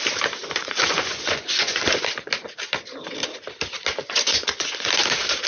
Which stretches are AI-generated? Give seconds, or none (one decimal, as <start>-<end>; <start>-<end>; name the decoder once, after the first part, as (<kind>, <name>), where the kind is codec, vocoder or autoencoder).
0.4-2.3 (vocoder, Vocos); 4.0-4.9